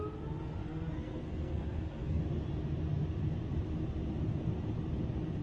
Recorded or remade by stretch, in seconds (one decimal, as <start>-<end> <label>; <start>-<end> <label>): 0.0-0.6 recorded; 0.6-2.2 remade; 2.2-5.4 recorded